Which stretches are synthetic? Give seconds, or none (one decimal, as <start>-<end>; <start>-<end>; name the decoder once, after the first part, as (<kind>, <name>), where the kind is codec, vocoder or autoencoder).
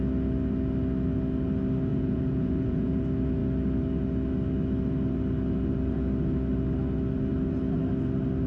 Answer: 1.9-3.0 (vocoder, Vocos)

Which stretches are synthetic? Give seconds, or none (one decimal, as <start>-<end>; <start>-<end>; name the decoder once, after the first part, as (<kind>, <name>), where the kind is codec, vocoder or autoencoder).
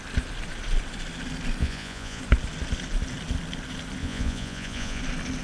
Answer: 1.6-2.2 (vocoder, Vocos); 4.0-5.0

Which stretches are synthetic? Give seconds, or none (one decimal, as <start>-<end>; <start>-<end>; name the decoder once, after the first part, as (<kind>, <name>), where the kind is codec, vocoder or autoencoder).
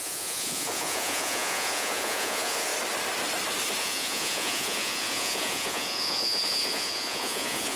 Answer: 0.0-2.7 (vocoder, Vocos); 3.8-7.8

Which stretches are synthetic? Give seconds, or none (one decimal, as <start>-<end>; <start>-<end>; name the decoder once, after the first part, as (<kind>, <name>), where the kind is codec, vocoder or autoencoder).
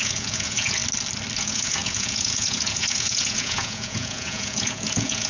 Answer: 0.0-0.8 (vocoder, Vocos); 1.4-5.3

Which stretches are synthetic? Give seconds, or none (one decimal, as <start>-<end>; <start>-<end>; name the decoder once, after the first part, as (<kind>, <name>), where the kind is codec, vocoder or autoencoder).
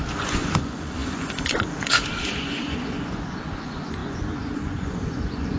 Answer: 0.0-5.6 (vocoder, Vocos)